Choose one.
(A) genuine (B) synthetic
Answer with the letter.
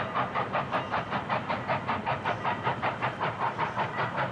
B